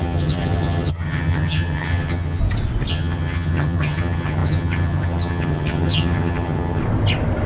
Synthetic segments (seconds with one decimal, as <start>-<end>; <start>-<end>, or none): 0.0-2.4; 2.9-6.8